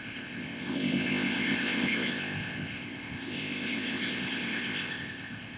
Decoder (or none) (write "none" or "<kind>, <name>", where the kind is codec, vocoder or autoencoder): codec, ZipCodec